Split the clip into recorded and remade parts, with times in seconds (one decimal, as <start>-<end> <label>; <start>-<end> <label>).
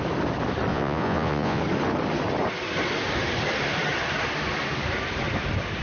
0.0-0.7 recorded; 0.7-1.6 remade; 1.6-5.8 recorded